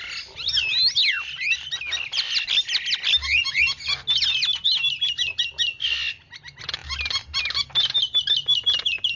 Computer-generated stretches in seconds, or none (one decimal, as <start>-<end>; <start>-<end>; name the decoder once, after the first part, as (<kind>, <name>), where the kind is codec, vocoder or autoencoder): none